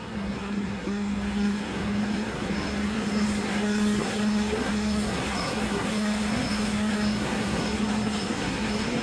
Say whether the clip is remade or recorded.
remade